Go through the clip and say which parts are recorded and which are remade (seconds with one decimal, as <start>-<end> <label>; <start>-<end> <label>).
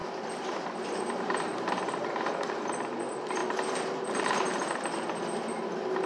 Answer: 0.0-2.3 remade; 2.3-6.1 recorded